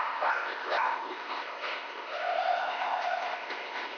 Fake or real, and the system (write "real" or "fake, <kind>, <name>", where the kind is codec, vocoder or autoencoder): fake, codec, ZipCodec